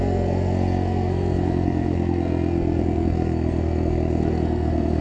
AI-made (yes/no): yes